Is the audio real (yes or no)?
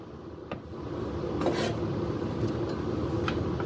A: yes